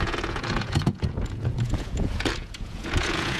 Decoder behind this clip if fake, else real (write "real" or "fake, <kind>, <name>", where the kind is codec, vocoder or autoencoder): fake, vocoder, Vocos